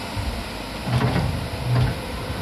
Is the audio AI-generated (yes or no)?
no